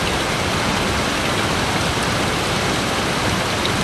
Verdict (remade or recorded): recorded